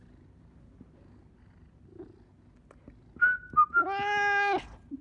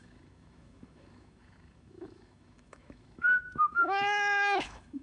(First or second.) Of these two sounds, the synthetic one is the second